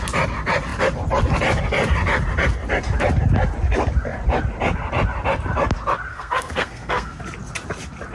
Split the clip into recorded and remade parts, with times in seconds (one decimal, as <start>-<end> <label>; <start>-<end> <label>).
0.0-6.1 recorded; 6.1-7.2 remade; 7.2-8.1 recorded